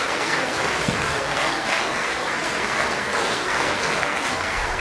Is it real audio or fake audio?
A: fake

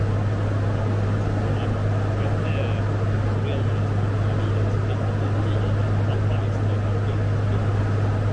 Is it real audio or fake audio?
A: real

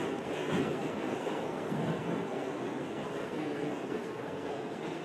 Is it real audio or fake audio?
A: fake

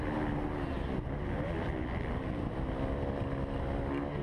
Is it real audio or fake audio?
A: real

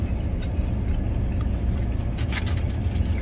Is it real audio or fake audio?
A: real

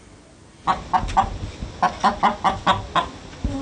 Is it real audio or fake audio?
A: real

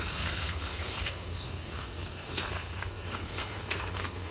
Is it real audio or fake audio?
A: fake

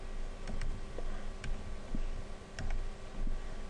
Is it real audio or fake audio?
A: real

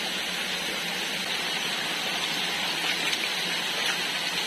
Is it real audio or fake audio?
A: real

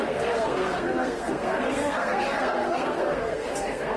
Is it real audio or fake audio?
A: fake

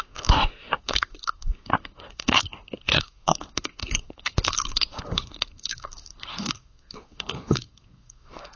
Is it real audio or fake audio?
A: fake